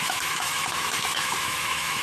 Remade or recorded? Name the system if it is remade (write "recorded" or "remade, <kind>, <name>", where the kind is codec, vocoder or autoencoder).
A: remade, autoencoder, DAC-VAE